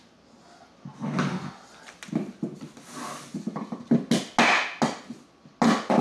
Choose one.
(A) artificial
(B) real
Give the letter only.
B